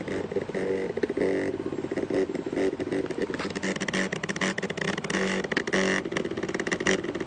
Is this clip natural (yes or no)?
yes